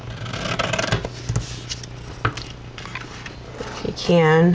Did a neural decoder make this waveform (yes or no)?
no